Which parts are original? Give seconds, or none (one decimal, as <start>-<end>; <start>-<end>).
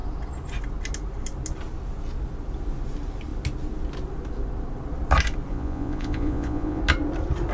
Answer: 0.0-5.5; 6.8-7.5